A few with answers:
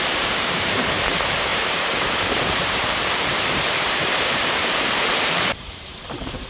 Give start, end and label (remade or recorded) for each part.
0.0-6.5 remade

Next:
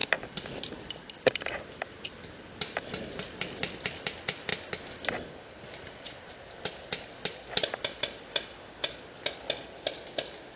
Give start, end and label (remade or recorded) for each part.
0.0-10.6 recorded

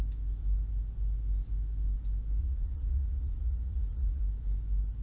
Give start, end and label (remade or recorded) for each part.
0.0-2.4 recorded; 2.4-4.2 remade; 4.2-5.0 recorded

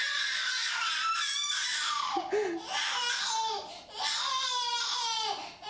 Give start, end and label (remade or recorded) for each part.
0.0-5.7 recorded

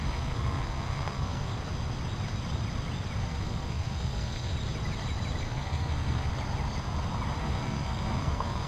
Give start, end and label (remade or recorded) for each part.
0.0-1.5 remade; 1.5-3.2 recorded; 3.2-4.5 remade; 4.5-5.4 recorded; 5.4-6.3 remade; 6.3-7.4 recorded; 7.4-8.7 remade

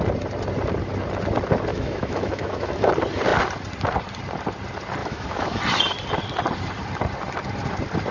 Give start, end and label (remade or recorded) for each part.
0.0-1.7 recorded; 1.7-2.9 remade; 2.9-5.0 recorded; 5.0-5.6 remade; 5.6-8.1 recorded

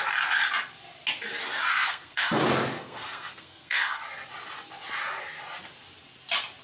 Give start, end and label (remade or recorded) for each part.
0.0-1.7 recorded; 1.7-2.4 remade; 2.4-2.8 recorded; 2.8-4.0 remade; 4.0-6.6 recorded